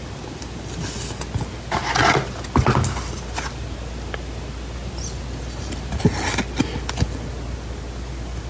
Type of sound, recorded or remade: recorded